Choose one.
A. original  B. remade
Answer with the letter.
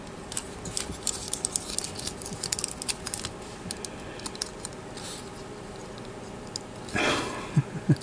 A